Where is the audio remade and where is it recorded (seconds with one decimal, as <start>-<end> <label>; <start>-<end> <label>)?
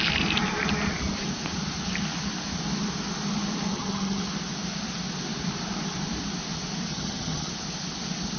0.0-3.7 recorded; 3.7-4.2 remade; 4.2-6.9 recorded; 6.9-7.5 remade; 7.5-8.4 recorded